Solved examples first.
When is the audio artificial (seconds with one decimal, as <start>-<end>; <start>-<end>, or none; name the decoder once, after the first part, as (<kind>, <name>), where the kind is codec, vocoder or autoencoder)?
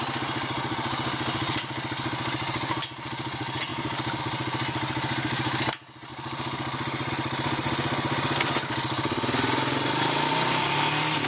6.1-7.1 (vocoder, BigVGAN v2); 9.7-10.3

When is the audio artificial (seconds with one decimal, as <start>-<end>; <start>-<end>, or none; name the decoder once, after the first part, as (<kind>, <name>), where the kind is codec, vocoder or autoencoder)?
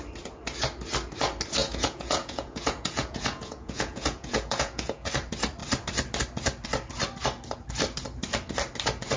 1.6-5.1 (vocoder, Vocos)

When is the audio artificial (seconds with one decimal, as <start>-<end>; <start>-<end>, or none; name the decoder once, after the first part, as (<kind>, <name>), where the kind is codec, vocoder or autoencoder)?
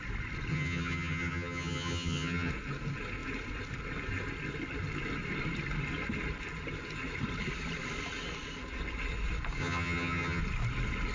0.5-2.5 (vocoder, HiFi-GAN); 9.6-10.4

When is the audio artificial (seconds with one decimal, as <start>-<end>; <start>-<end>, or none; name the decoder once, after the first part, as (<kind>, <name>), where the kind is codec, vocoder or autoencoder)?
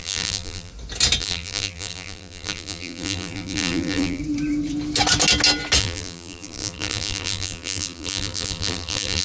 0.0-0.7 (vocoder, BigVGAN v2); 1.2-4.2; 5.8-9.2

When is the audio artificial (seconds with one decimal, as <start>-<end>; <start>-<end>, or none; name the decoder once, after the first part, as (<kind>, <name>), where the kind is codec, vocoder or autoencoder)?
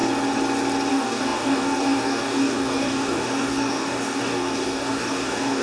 0.9-5.6 (codec, DAC)